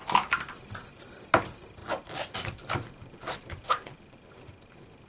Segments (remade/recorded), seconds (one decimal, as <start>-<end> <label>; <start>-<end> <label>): 0.0-5.1 recorded